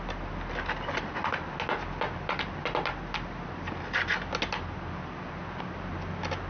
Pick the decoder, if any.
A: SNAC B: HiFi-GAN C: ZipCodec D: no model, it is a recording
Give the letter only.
D